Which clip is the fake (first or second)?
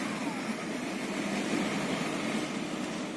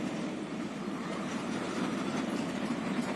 second